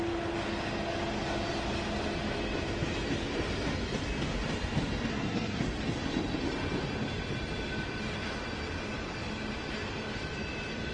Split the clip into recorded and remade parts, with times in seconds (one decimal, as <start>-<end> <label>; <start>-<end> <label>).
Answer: 0.0-5.1 recorded; 5.1-5.6 remade; 5.6-10.9 recorded